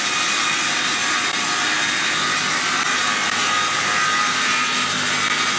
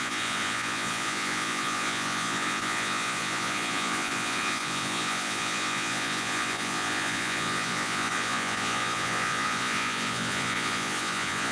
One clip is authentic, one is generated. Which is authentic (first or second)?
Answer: first